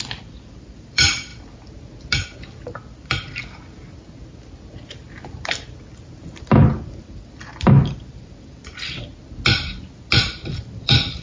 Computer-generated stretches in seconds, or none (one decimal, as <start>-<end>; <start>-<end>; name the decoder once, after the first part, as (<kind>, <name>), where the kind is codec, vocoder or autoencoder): 0.0-1.3 (vocoder, BigVGAN v2); 6.5-9.1; 10.2-11.2